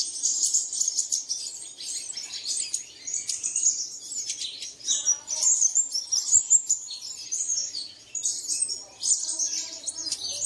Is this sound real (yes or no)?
yes